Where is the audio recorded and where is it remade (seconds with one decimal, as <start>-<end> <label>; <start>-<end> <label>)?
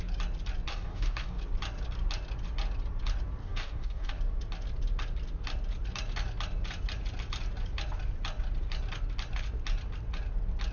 0.0-0.7 recorded; 0.7-1.4 remade; 1.4-3.4 recorded; 3.4-4.1 remade; 4.1-10.7 recorded